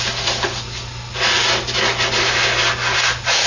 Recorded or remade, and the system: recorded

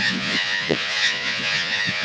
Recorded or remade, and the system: remade, vocoder, Vocos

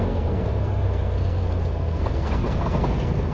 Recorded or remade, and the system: remade, codec, SNAC